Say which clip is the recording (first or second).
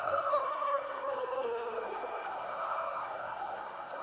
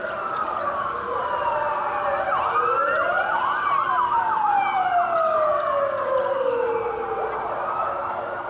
second